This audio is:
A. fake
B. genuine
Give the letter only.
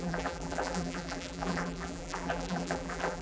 A